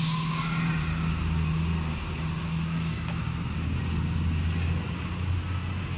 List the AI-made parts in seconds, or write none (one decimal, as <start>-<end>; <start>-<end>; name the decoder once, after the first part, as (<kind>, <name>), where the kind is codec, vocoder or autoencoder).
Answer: 2.4-3.2 (autoencoder, DAC-VAE)